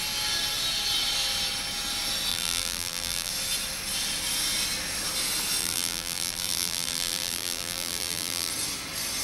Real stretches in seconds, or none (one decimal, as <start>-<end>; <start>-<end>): 0.0-2.3; 3.3-5.6; 8.5-9.2